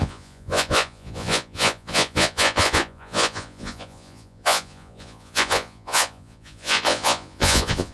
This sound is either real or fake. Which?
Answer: fake